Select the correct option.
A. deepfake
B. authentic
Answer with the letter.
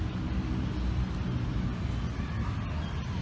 B